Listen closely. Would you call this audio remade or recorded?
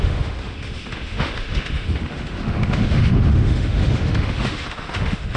remade